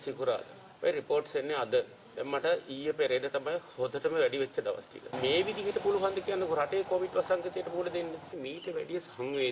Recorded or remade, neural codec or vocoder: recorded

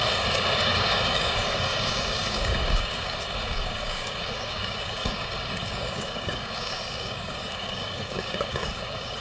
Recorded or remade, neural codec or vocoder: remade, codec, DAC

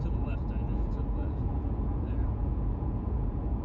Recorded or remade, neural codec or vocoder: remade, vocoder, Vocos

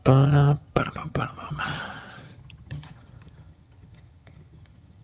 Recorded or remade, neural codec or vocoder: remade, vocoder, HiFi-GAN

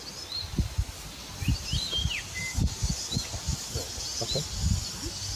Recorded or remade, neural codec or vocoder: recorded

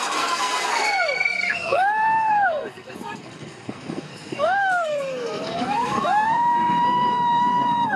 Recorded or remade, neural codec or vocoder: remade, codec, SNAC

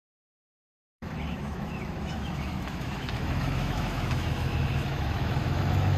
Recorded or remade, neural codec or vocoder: remade, autoencoder, DAC-VAE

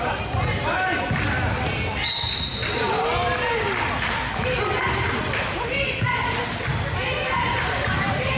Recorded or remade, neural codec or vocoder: recorded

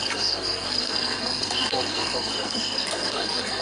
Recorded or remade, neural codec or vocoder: remade, codec, SNAC